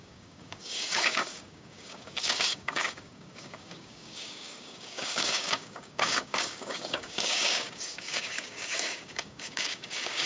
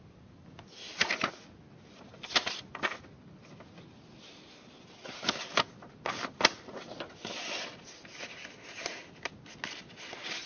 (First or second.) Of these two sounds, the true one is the second